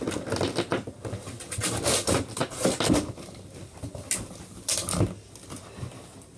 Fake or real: real